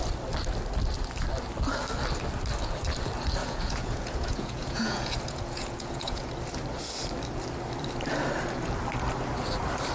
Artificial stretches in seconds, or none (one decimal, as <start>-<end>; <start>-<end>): 3.4-6.3